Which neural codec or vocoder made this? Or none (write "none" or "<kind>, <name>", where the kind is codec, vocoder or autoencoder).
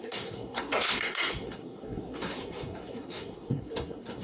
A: codec, SNAC